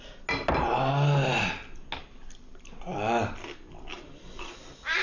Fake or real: real